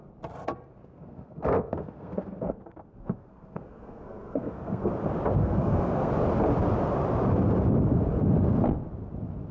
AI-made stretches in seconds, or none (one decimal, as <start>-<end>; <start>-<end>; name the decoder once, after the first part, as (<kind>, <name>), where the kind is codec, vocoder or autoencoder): 0.8-4.9 (codec, SNAC); 5.4-6.1